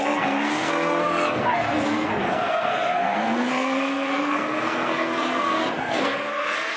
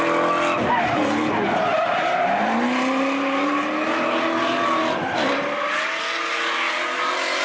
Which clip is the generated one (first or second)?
first